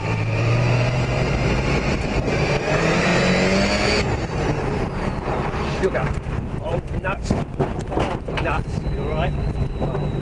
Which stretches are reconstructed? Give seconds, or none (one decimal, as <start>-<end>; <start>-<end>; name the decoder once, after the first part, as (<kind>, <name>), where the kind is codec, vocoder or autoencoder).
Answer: 0.0-3.1 (vocoder, BigVGAN v2); 4.0-10.2